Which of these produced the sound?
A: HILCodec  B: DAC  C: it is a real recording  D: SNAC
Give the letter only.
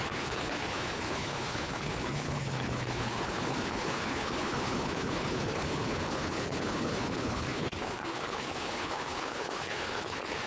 A